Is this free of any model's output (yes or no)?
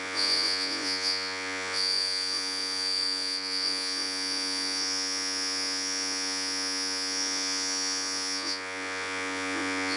no